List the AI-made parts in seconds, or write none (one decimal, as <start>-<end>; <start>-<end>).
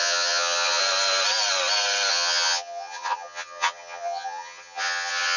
0.0-0.8; 2.1-5.4